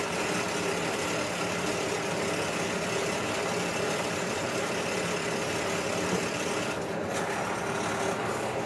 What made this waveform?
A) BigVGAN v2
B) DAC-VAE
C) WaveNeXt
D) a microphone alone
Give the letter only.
D